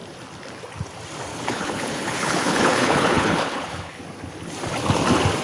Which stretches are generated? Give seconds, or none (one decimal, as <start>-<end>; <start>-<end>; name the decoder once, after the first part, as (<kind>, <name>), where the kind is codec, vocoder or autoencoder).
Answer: 1.3-4.0 (codec, HILCodec)